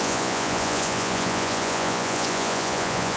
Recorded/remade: remade